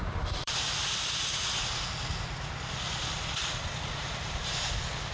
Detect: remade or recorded remade